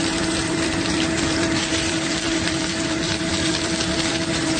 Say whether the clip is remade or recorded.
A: remade